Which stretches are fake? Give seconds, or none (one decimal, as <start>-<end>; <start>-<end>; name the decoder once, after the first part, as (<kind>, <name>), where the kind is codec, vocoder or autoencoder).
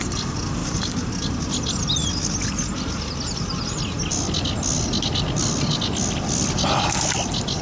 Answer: 0.6-1.1 (vocoder, BigVGAN v2)